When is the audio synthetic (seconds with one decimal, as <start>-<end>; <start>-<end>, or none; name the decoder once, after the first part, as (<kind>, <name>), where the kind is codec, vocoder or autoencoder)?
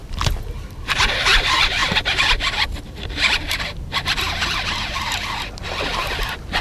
none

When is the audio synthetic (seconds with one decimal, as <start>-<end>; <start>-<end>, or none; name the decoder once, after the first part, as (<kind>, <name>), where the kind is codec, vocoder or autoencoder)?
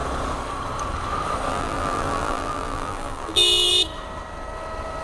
1.5-3.7 (vocoder, BigVGAN v2)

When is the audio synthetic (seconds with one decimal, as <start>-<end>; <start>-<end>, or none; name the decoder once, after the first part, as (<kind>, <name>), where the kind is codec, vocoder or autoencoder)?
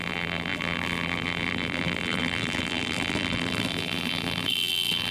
0.0-5.1 (vocoder, BigVGAN v2)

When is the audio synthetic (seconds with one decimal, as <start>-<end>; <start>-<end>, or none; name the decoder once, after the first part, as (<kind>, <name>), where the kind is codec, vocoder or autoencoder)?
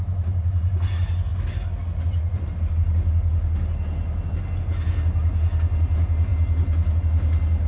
none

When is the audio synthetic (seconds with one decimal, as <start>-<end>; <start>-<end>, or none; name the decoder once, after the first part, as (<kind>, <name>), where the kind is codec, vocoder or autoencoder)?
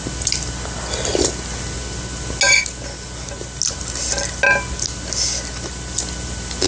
none